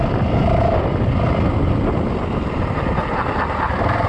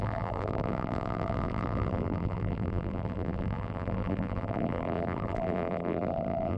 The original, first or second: first